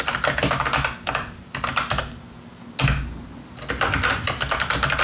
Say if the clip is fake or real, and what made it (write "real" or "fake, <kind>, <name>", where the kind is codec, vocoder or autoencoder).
real